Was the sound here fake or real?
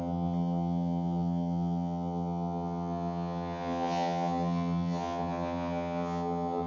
fake